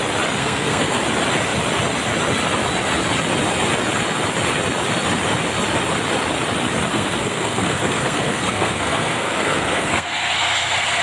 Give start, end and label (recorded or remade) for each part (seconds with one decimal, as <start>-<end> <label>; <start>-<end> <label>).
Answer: 0.0-0.4 recorded; 0.4-1.0 remade; 1.0-6.9 recorded; 6.9-11.0 remade